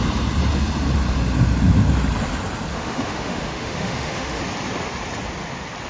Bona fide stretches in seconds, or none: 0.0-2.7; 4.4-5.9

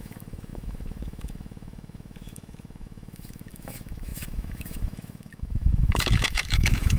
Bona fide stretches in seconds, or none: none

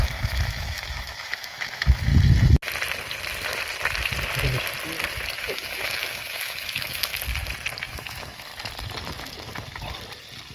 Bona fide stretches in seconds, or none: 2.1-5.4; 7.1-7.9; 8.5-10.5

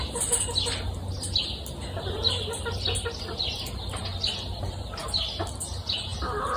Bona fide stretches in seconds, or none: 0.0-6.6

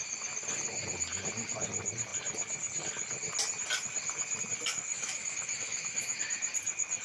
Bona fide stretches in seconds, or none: 0.0-4.9; 6.2-7.0